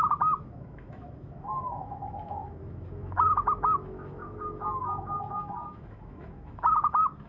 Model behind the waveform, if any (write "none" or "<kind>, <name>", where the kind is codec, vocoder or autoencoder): autoencoder, DAC-VAE